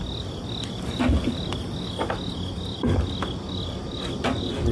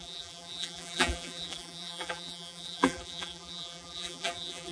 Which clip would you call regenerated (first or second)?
second